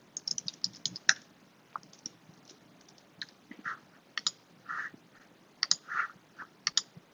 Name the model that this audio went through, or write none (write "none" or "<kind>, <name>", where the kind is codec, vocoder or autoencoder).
none